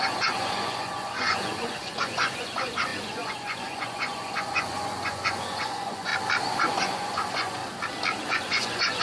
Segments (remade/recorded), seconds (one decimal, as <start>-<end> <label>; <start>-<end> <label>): 0.0-6.1 remade; 6.1-6.6 recorded; 6.6-7.6 remade; 7.6-8.2 recorded; 8.2-9.0 remade